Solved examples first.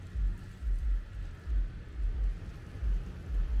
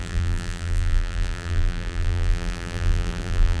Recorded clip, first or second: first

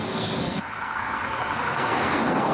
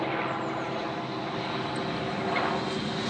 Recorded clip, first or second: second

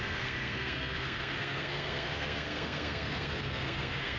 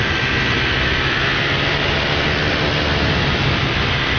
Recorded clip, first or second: second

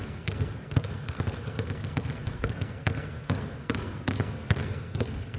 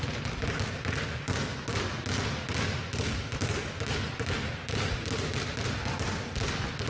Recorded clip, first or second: second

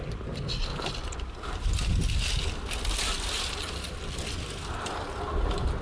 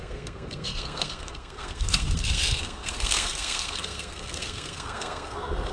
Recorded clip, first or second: first